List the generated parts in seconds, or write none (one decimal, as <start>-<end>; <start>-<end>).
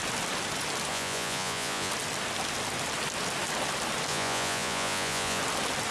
0.9-1.9; 4.1-5.4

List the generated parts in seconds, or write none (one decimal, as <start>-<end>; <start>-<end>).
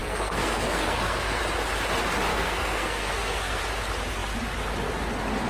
0.0-1.4; 2.3-3.6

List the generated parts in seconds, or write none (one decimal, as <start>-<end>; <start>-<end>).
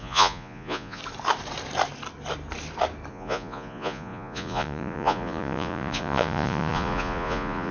0.0-1.0; 3.1-7.7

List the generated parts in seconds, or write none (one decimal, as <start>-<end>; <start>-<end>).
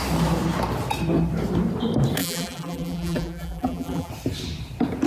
2.2-4.1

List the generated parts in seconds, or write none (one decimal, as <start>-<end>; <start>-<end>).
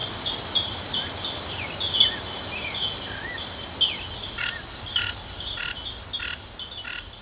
none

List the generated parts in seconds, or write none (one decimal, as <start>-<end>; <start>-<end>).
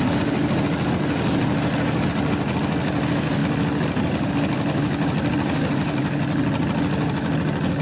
none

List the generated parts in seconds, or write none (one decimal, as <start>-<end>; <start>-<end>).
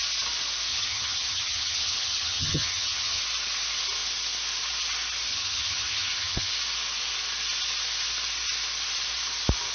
0.7-3.2; 5.3-6.5